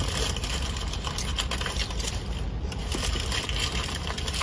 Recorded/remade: recorded